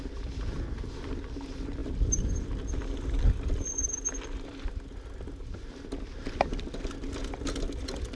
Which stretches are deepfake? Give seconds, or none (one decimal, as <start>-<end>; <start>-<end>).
none